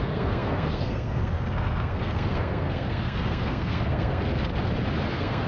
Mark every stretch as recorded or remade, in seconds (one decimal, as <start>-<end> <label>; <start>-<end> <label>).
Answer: 0.0-4.5 remade; 4.5-5.1 recorded; 5.1-5.5 remade